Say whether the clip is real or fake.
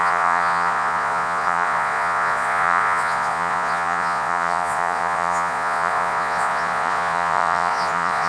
fake